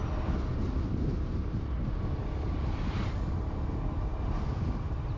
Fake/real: real